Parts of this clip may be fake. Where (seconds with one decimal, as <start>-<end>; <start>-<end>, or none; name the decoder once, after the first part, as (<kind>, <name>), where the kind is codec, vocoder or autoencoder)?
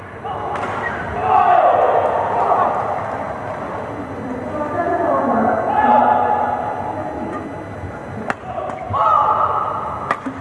none